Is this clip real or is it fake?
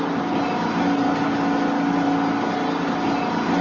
real